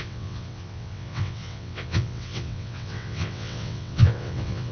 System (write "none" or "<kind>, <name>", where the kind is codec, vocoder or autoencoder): vocoder, WaveNeXt